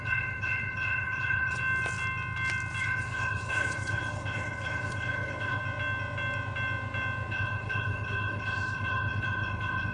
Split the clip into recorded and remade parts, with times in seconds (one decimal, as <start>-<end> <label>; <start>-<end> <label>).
0.0-1.6 remade; 1.6-2.8 recorded; 2.8-5.6 remade; 5.6-7.3 recorded; 7.3-9.9 remade

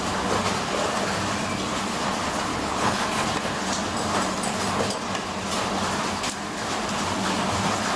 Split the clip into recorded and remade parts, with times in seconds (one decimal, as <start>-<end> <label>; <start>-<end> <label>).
0.0-2.5 recorded; 2.5-3.0 remade; 3.0-8.0 recorded